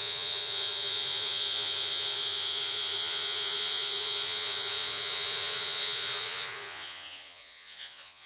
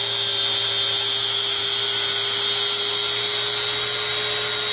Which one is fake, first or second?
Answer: first